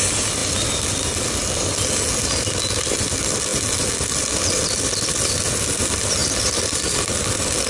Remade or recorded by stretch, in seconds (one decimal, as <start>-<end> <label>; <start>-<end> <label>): 0.0-7.7 recorded